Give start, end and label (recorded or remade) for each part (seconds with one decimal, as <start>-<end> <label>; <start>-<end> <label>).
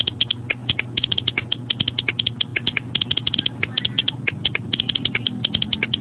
0.0-6.0 recorded